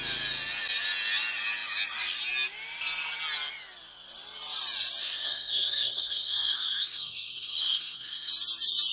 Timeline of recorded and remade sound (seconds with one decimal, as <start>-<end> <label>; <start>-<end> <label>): 0.0-5.0 recorded; 5.0-8.3 remade; 8.3-8.9 recorded